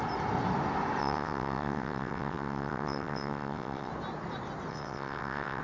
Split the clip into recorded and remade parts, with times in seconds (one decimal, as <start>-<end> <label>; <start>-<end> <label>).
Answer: 0.0-1.0 recorded; 1.0-3.9 remade; 3.9-4.7 recorded; 4.7-5.6 remade